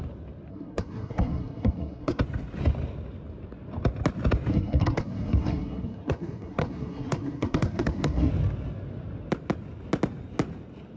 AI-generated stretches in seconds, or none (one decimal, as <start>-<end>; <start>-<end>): 0.5-2.2; 4.5-8.3